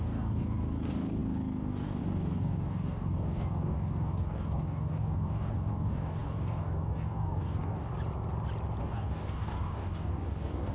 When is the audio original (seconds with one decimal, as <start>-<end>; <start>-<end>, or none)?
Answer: 7.9-8.8